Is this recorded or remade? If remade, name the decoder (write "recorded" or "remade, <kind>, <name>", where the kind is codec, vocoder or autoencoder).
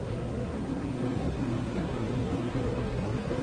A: remade, codec, SNAC